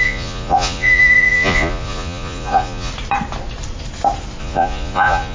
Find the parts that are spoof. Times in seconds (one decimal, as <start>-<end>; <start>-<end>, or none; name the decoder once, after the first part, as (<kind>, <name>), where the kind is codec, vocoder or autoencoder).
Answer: 0.0-2.9 (vocoder, Vocos); 4.4-5.3